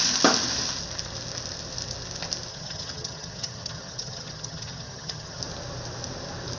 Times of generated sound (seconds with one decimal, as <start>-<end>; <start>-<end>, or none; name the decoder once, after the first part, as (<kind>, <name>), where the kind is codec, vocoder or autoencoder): 2.5-5.4 (vocoder, HiFi-GAN)